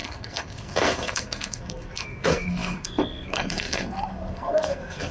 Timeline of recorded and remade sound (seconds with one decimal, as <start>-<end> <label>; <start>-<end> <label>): 0.0-5.1 remade